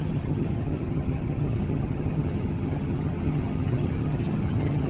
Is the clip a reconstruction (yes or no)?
yes